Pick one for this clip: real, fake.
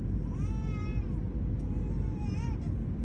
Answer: real